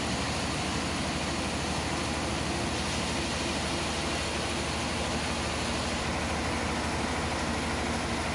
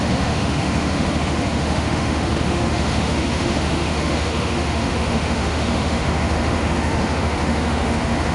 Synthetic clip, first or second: second